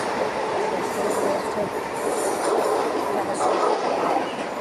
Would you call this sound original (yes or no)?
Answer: yes